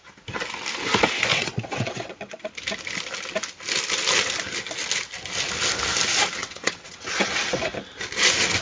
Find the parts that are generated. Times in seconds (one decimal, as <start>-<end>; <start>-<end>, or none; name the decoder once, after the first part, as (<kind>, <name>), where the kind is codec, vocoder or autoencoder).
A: 1.3-2.5 (vocoder, WaveNeXt); 6.4-7.5